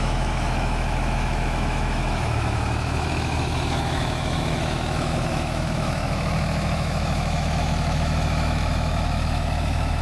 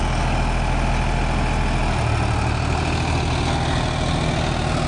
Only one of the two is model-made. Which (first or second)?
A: first